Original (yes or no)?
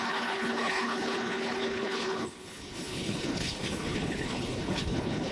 no